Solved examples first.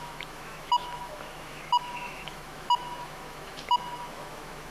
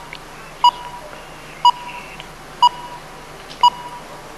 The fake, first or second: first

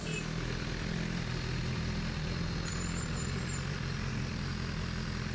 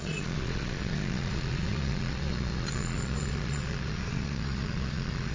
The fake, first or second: second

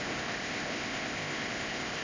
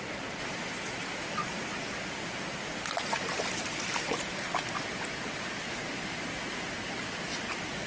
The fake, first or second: first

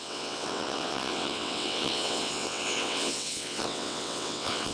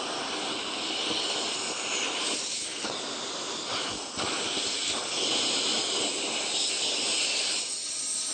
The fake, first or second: first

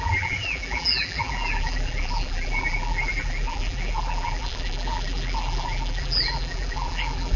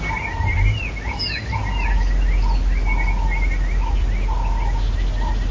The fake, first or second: first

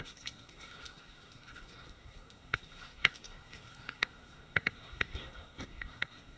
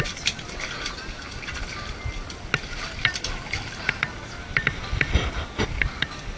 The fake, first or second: first